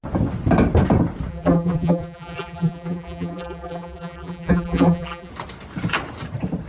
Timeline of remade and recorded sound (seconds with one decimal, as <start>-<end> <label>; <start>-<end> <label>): 0.0-1.3 recorded; 1.3-5.3 remade; 5.3-6.7 recorded